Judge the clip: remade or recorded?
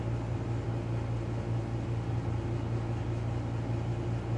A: recorded